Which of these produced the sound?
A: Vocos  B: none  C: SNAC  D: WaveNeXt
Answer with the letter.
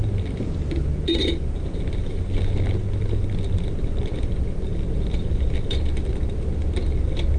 B